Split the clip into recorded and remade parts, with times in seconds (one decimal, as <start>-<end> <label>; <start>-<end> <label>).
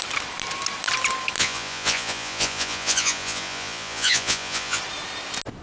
0.0-1.4 recorded; 1.4-4.8 remade; 4.8-5.6 recorded